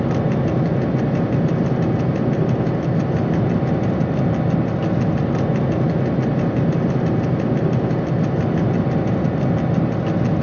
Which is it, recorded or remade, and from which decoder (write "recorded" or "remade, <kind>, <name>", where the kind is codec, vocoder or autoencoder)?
recorded